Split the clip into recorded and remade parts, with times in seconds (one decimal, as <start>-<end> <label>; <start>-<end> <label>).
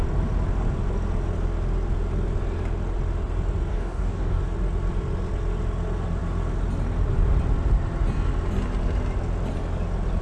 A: 0.0-3.7 recorded; 3.7-4.4 remade; 4.4-10.2 recorded